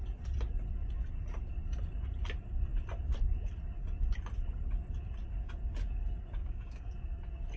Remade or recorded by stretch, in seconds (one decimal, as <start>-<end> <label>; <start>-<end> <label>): 0.0-6.4 recorded; 6.4-6.9 remade; 6.9-7.6 recorded